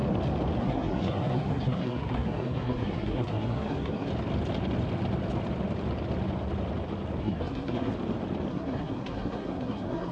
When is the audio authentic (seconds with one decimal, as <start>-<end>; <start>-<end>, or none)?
0.0-0.6; 4.1-7.2; 7.9-8.5